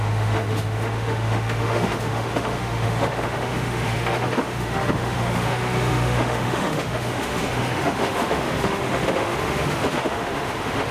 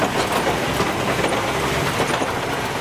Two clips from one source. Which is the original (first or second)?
second